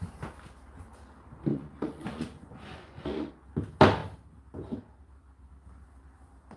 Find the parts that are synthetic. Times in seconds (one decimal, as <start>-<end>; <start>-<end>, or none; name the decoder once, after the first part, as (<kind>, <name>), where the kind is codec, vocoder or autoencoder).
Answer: 1.5-3.3 (vocoder, Vocos)